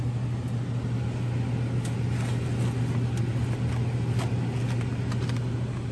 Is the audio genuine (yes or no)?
yes